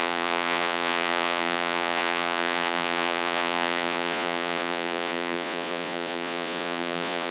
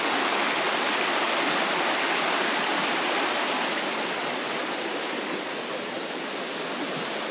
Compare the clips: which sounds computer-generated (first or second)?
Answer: first